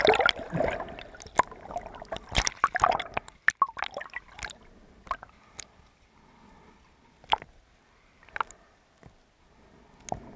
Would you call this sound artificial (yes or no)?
no